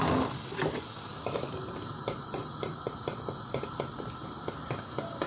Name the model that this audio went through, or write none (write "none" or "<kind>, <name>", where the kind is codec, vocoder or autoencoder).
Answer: none